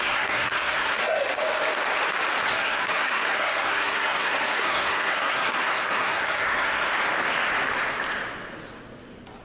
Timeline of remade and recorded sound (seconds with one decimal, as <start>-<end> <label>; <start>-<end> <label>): 0.0-1.4 remade; 1.4-2.4 recorded; 2.4-6.9 remade; 6.9-9.4 recorded